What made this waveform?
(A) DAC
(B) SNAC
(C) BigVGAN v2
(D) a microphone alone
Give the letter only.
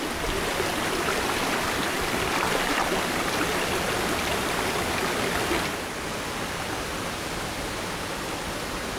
D